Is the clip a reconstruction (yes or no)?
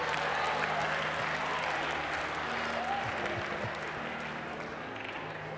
no